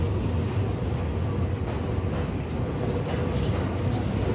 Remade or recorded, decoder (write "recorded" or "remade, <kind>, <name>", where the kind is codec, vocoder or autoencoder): recorded